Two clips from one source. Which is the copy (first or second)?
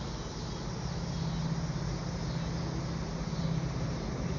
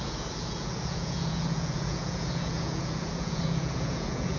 second